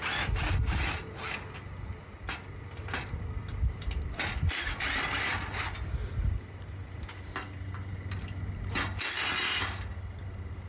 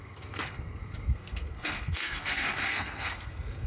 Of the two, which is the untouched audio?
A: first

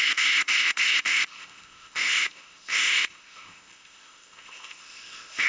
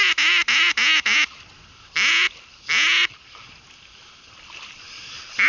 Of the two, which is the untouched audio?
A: second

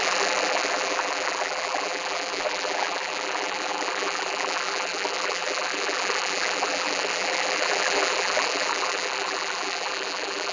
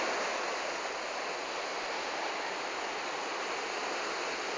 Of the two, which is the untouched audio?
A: second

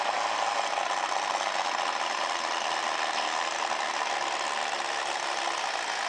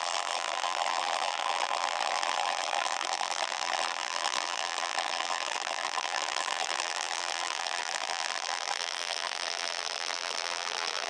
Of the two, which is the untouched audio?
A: first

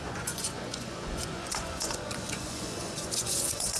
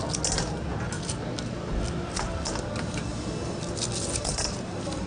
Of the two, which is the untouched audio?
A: second